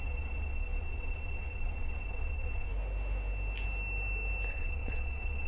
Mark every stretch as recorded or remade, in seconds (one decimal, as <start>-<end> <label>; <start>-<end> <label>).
0.0-2.7 remade; 2.7-4.5 recorded; 4.5-5.5 remade